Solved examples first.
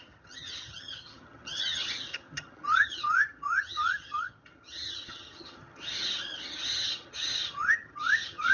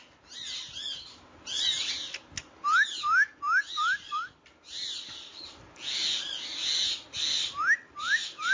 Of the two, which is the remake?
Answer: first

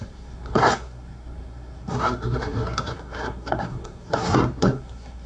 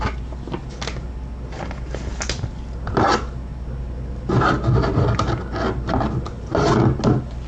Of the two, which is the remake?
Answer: first